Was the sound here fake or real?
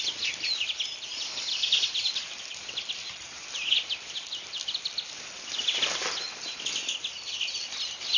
real